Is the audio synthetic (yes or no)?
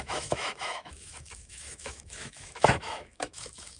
yes